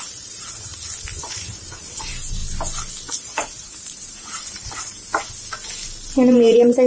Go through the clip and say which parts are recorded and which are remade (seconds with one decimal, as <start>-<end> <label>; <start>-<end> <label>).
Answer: 0.0-0.7 remade; 0.7-1.2 recorded; 1.2-2.4 remade; 2.4-3.1 recorded; 3.1-5.1 remade; 5.1-6.3 recorded; 6.3-6.9 remade